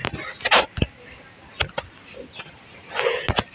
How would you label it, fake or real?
real